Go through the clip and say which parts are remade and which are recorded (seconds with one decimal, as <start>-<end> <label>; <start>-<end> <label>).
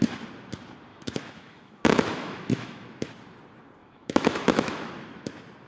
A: 0.0-0.9 recorded; 0.9-3.1 remade; 3.1-3.8 recorded; 3.8-4.9 remade; 4.9-5.7 recorded